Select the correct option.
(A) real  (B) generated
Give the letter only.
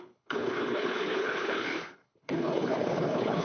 B